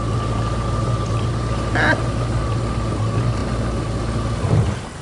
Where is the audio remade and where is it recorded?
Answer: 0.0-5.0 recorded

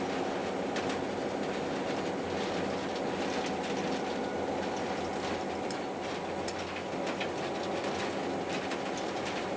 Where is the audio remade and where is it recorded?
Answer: 0.0-9.6 recorded

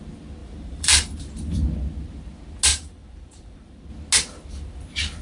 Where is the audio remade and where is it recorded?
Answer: 0.0-0.4 recorded; 0.4-1.4 remade; 1.4-2.7 recorded; 2.7-3.9 remade; 3.9-5.2 recorded

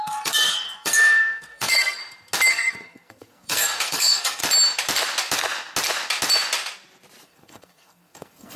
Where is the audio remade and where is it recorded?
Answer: 0.0-2.0 remade; 2.0-2.5 recorded; 2.5-4.4 remade; 4.4-7.2 recorded; 7.2-8.6 remade